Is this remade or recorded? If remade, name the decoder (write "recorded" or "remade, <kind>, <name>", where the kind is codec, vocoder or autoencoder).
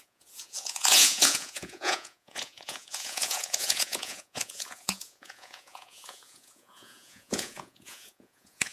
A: remade, vocoder, Vocos